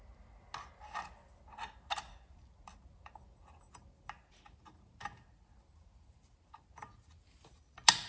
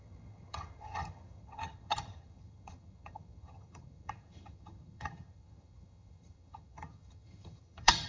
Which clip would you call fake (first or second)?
second